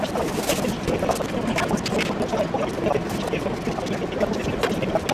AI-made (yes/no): no